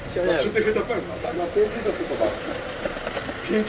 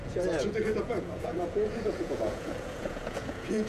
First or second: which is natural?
first